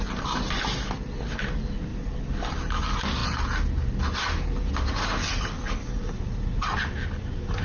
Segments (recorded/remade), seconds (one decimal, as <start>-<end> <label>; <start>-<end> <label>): 0.0-7.6 recorded